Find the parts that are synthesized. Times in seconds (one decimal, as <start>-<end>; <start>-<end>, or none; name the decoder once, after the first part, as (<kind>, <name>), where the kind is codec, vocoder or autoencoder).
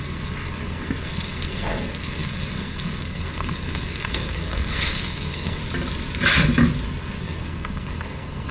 0.0-5.6 (codec, SNAC); 7.0-8.5